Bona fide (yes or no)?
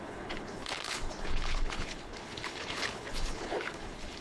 no